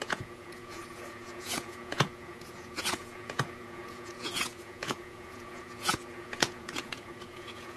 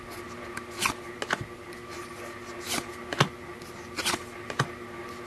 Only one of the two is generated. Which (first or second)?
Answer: first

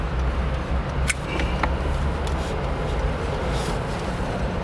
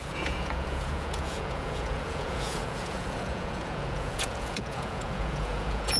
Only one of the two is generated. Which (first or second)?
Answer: second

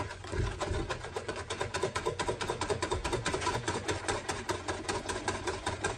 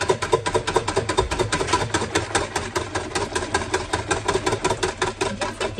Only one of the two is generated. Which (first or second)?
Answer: first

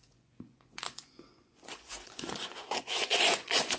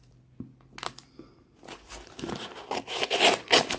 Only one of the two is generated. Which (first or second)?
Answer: first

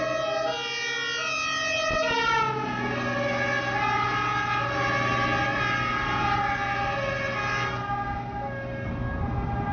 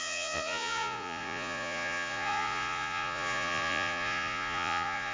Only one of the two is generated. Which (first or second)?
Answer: second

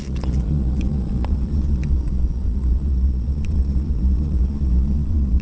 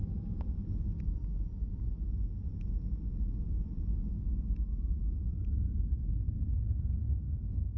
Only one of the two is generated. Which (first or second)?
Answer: first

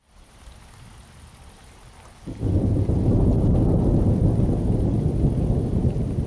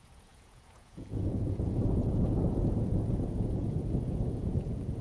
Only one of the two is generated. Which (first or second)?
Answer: second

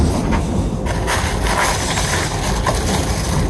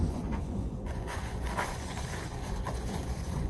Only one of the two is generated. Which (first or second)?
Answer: second